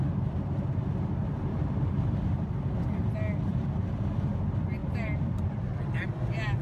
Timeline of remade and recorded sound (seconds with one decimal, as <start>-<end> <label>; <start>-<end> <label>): 0.0-1.5 recorded; 1.5-2.5 remade; 2.5-3.5 recorded; 3.5-4.3 remade; 4.3-4.8 recorded; 4.8-6.1 remade; 6.1-6.6 recorded